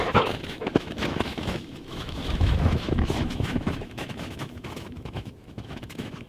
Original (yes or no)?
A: no